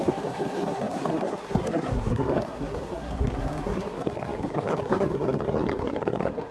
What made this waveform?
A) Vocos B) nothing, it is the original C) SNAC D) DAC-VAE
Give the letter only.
C